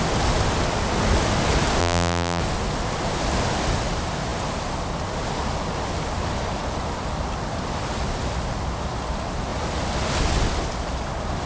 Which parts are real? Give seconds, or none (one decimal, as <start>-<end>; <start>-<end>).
0.0-1.8; 2.4-11.5